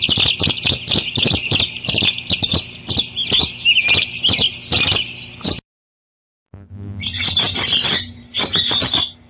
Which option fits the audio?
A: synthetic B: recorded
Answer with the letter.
B